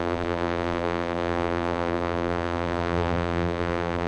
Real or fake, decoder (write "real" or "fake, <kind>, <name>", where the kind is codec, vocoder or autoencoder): fake, vocoder, BigVGAN v2